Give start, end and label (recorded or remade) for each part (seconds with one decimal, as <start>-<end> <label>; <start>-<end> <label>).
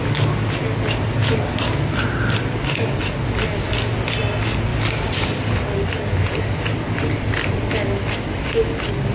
0.0-9.1 recorded